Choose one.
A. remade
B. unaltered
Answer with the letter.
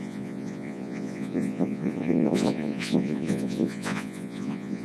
A